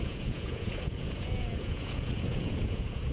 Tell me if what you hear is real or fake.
fake